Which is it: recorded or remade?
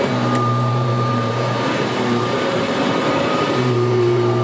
remade